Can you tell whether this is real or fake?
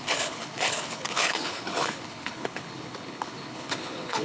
fake